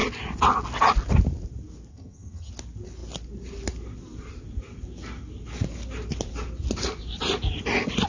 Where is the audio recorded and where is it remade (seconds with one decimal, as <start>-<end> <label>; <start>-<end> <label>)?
0.0-1.9 recorded; 1.9-2.5 remade; 2.5-8.1 recorded